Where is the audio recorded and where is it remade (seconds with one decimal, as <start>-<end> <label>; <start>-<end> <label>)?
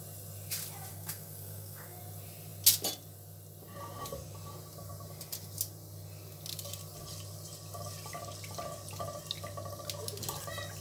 0.0-0.9 recorded; 0.9-2.0 remade; 2.0-10.8 recorded